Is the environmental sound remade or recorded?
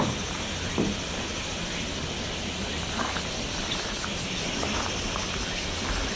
recorded